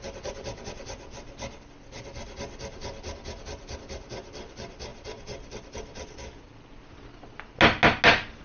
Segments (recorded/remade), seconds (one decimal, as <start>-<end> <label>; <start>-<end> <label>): 0.0-8.4 recorded

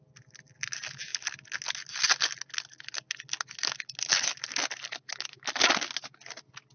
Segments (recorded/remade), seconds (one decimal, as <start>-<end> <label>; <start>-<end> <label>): 0.0-6.7 recorded

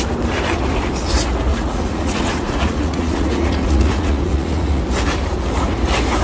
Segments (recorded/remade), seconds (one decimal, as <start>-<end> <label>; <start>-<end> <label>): 0.0-1.5 recorded; 1.5-4.8 remade; 4.8-6.2 recorded

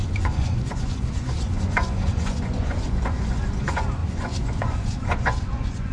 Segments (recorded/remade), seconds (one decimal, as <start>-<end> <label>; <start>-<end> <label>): 0.0-5.9 remade

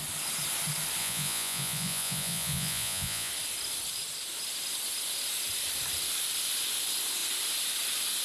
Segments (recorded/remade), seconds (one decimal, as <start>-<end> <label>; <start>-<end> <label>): 0.0-1.0 recorded; 1.0-3.3 remade; 3.3-8.2 recorded

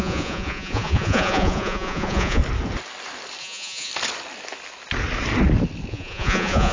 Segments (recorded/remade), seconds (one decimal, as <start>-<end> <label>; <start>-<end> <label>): 0.0-2.4 remade; 2.4-3.4 recorded; 3.4-3.9 remade; 3.9-5.9 recorded; 5.9-6.7 remade

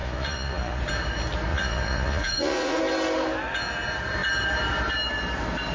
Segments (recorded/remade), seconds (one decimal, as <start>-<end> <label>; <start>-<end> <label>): 0.0-0.8 remade; 0.8-1.5 recorded; 1.5-2.8 remade; 2.8-5.7 recorded

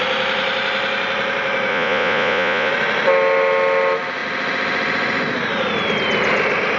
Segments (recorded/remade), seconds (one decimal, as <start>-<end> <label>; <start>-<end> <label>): 0.0-1.7 recorded; 1.7-2.7 remade; 2.7-6.8 recorded